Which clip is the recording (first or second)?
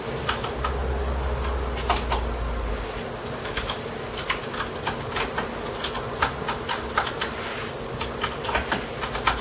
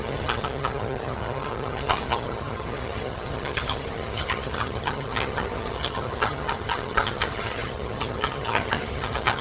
first